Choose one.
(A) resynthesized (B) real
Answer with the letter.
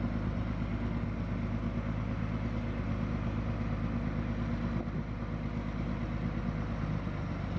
B